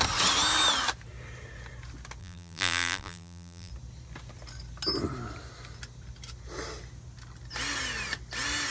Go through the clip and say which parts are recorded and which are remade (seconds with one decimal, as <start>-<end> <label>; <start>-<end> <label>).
0.0-2.2 recorded; 2.2-3.7 remade; 3.7-8.7 recorded